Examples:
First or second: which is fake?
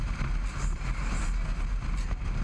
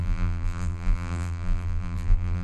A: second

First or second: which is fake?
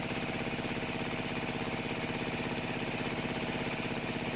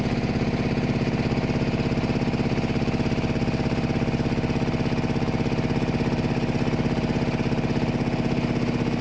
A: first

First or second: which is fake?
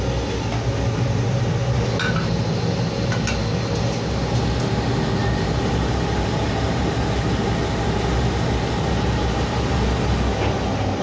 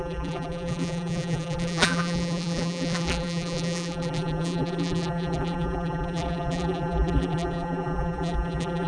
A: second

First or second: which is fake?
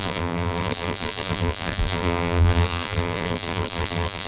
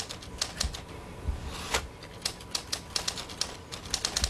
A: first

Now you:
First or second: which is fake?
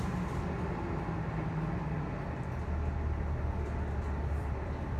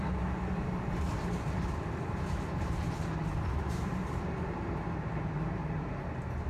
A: second